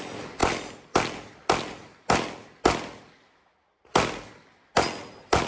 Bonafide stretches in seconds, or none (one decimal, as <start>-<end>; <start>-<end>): 0.0-5.5